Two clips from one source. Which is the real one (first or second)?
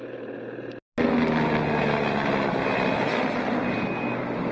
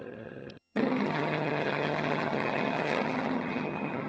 first